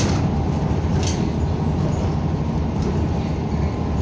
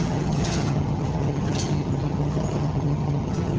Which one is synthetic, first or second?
second